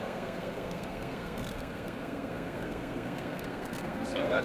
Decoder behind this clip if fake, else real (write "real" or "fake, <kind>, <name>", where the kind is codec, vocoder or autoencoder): fake, codec, SNAC